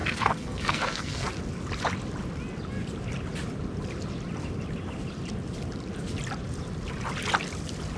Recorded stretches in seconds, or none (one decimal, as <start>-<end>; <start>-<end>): 1.3-8.0